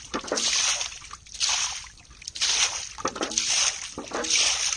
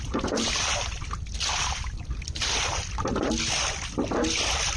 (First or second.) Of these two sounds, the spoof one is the second